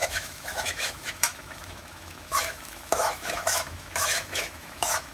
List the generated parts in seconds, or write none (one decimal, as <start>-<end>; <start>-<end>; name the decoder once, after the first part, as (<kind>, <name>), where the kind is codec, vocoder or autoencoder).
0.0-5.1 (autoencoder, DAC-VAE)